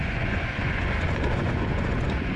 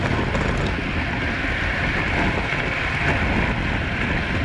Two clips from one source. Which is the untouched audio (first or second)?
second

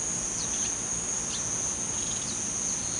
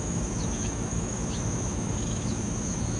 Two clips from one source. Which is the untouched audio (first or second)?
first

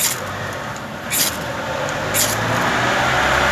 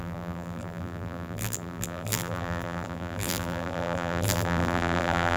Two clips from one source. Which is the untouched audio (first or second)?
first